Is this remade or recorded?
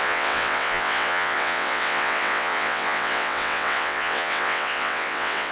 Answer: remade